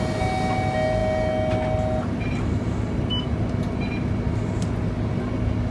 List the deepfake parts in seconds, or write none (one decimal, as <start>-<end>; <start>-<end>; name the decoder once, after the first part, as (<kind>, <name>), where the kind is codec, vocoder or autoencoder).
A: none